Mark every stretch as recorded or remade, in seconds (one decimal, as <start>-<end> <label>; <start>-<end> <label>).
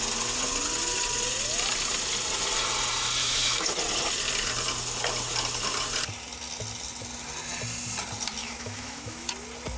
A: 0.0-3.2 recorded; 3.2-3.7 remade; 3.7-8.4 recorded; 8.4-9.3 remade; 9.3-9.8 recorded